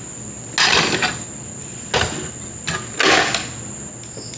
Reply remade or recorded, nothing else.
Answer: recorded